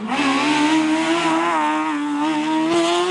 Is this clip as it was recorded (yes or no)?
yes